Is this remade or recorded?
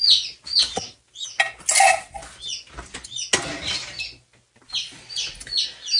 recorded